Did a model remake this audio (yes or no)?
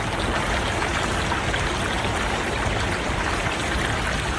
no